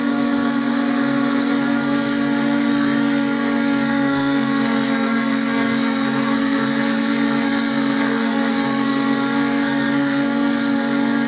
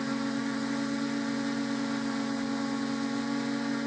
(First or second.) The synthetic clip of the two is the first